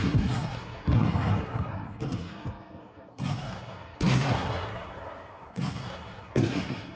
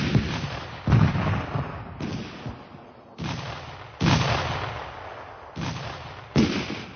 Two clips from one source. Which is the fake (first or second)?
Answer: first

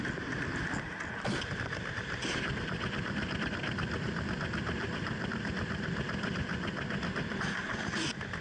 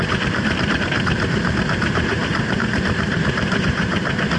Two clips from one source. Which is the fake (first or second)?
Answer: second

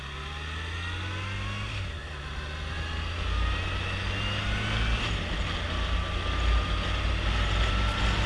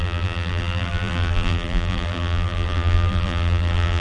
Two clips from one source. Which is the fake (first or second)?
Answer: second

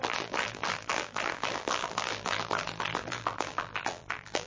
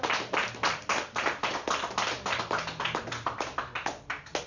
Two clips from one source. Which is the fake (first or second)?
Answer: first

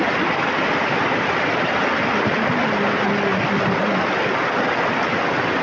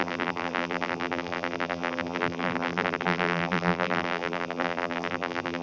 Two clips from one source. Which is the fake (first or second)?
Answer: second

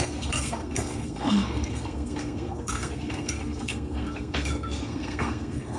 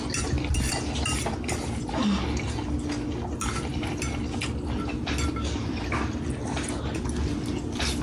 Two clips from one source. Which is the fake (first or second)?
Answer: first